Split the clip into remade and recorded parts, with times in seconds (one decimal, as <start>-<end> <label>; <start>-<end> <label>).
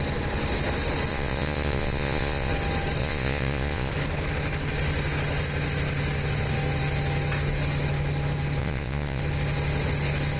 0.0-1.1 recorded; 1.1-2.5 remade; 2.5-3.0 recorded; 3.0-3.9 remade; 3.9-8.6 recorded; 8.6-9.2 remade; 9.2-10.4 recorded